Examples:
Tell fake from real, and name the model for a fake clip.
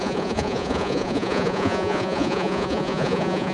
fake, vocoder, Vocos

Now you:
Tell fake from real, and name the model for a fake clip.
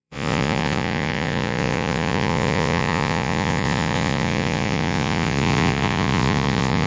fake, vocoder, Vocos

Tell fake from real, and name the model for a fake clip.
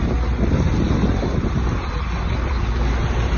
real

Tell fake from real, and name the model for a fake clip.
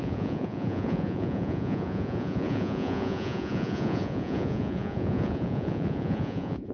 fake, vocoder, Vocos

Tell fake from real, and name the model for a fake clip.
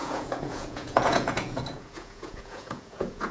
fake, vocoder, Vocos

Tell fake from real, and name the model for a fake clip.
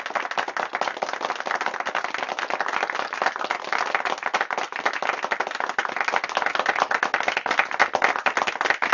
real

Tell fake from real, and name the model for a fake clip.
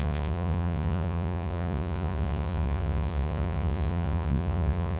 fake, vocoder, Vocos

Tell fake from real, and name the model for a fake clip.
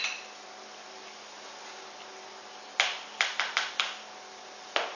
real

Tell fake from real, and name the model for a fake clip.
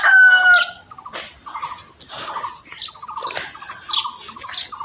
real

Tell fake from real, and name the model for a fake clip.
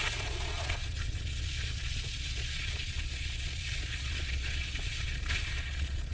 fake, vocoder, Vocos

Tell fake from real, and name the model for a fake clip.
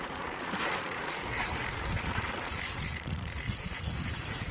fake, vocoder, Vocos